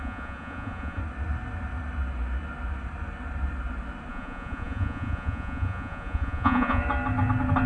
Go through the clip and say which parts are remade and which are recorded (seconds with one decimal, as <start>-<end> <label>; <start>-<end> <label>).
0.0-1.0 remade; 1.0-4.1 recorded; 4.1-6.8 remade; 6.8-7.7 recorded